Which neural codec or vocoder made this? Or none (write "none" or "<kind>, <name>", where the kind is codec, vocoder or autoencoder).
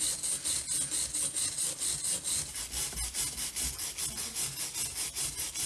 none